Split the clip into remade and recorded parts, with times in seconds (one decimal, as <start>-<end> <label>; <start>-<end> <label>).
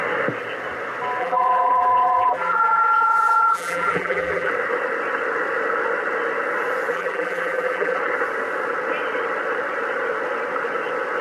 0.0-1.2 recorded; 1.2-4.5 remade; 4.5-6.9 recorded; 6.9-8.0 remade; 8.0-11.2 recorded